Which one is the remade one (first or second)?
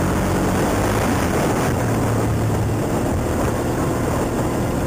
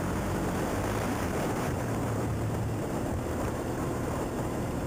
second